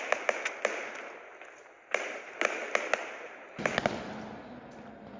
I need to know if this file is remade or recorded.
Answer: recorded